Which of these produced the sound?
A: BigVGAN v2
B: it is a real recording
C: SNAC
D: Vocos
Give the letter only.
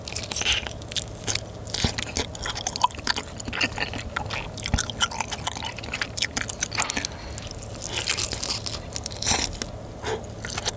B